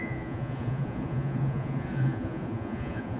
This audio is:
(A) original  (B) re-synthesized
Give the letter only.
B